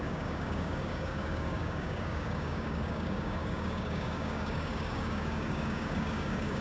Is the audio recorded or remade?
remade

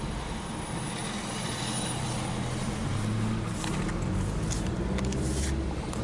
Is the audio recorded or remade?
recorded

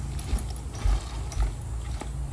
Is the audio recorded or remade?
recorded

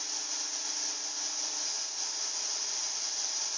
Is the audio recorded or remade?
recorded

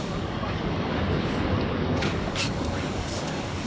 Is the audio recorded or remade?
remade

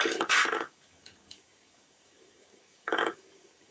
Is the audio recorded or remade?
remade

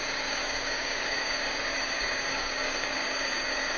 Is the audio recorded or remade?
remade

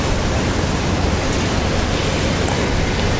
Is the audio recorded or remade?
recorded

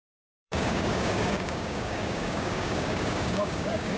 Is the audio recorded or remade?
remade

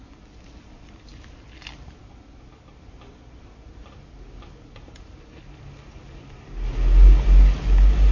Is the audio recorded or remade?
recorded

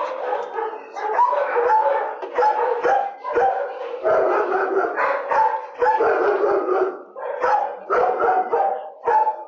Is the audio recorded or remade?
recorded